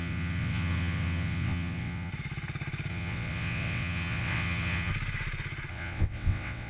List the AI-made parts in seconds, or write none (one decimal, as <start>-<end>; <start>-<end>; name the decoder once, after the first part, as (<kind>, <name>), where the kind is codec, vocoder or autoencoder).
0.0-2.1 (vocoder, WaveNeXt); 2.9-4.9; 5.7-6.7